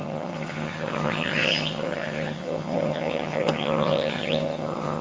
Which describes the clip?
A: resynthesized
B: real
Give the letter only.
A